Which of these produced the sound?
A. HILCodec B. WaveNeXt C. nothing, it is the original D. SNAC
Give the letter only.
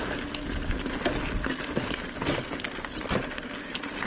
C